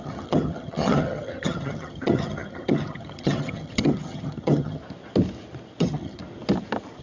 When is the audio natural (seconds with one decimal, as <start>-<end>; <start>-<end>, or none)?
4.8-5.8; 6.2-7.0